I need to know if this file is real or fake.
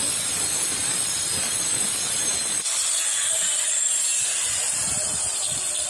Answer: real